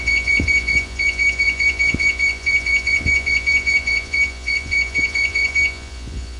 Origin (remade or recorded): remade